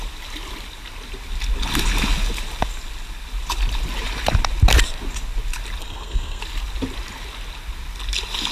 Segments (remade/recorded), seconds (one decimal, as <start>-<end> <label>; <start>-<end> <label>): 0.0-5.8 recorded; 5.8-6.4 remade; 6.4-8.5 recorded